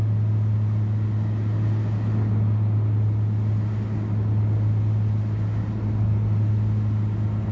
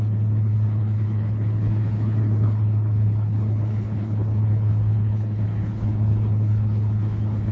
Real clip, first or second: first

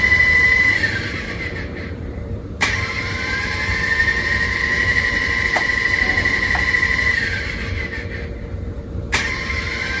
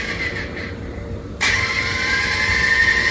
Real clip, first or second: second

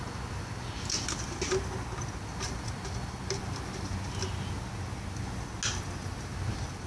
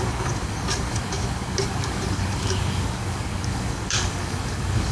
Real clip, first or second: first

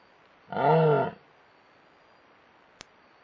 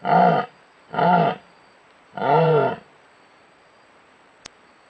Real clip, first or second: first